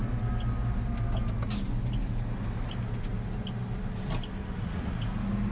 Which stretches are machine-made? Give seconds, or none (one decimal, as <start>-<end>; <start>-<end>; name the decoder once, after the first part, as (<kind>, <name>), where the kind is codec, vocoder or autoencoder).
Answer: 4.4-5.0 (vocoder, Vocos)